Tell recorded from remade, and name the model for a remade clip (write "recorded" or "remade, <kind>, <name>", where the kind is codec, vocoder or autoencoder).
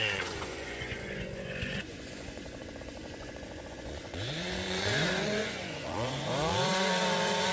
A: remade, vocoder, Vocos